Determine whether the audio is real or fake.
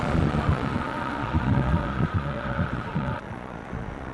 fake